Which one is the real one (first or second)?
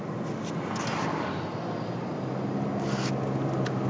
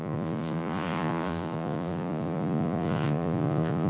first